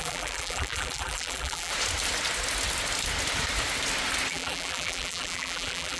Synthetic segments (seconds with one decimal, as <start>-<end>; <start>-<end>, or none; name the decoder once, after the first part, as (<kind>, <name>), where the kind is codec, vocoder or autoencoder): 0.0-1.7 (vocoder, BigVGAN v2); 4.3-6.0